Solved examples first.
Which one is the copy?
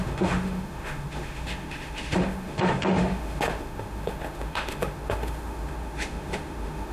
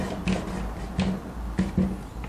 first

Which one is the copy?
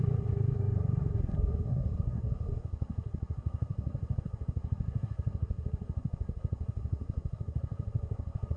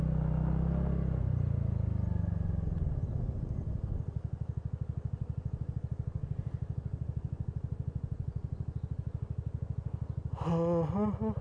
first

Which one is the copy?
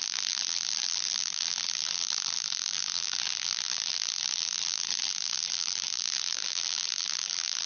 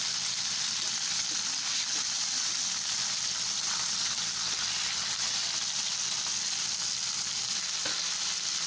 first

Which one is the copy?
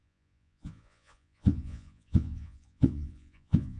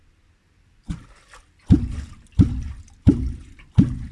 first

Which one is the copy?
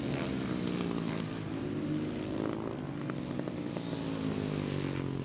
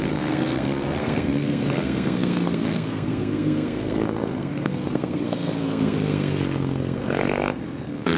second